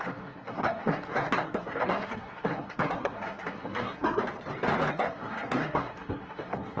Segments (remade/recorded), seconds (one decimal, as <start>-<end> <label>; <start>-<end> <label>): 0.0-4.2 remade; 4.2-4.9 recorded; 4.9-6.8 remade